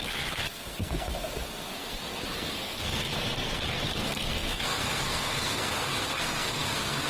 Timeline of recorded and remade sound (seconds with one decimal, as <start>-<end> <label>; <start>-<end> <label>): 0.0-7.1 remade